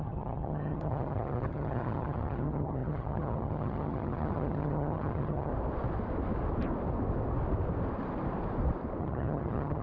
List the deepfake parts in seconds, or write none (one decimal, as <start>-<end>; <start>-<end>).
0.0-5.5; 9.0-9.8